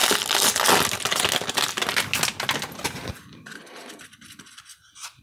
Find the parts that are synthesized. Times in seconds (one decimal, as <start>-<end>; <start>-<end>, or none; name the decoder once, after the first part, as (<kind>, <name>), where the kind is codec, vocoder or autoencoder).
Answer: none